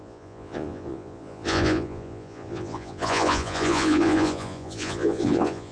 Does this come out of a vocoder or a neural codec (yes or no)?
yes